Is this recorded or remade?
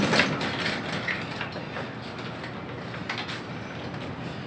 recorded